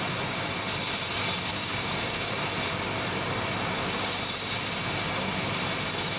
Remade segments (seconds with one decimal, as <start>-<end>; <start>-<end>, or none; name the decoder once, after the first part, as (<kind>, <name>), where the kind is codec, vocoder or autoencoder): 1.5-2.4 (codec, DAC)